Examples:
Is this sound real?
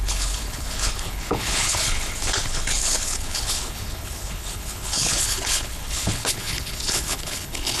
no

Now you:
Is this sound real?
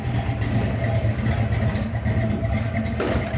yes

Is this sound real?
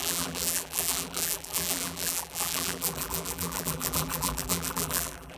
no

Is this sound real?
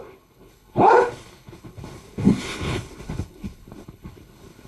no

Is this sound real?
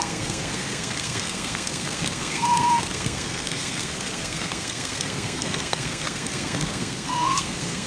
no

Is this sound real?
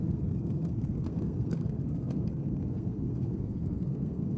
no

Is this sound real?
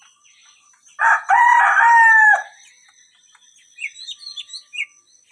yes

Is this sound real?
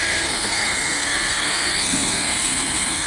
no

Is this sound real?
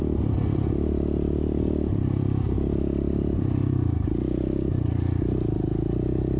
yes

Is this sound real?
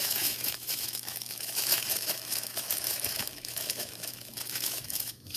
no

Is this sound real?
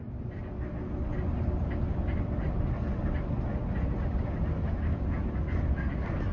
yes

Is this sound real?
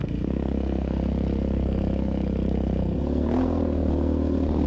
no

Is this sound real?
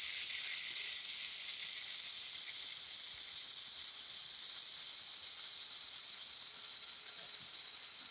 yes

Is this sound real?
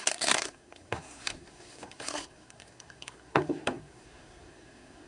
no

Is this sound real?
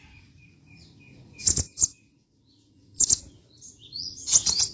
no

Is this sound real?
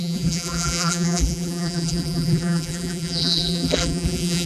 no